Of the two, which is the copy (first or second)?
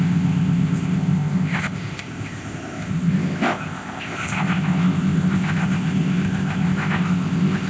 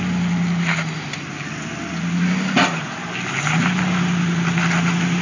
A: first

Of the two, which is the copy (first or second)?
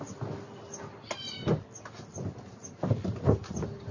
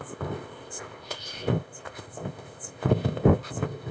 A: second